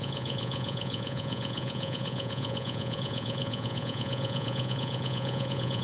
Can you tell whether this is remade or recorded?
remade